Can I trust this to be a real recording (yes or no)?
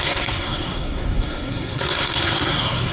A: no